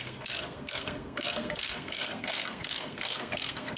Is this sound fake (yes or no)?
yes